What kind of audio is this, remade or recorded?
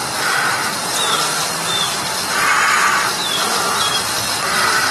recorded